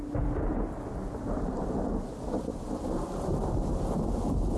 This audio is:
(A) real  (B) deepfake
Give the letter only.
A